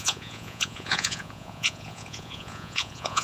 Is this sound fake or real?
fake